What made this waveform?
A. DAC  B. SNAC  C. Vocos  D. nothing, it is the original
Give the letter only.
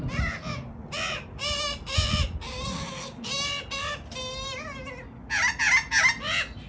D